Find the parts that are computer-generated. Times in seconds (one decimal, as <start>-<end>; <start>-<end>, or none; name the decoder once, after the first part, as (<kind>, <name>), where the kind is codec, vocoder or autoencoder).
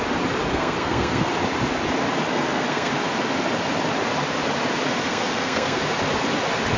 0.5-1.3 (codec, SNAC); 2.3-2.9; 5.1-5.8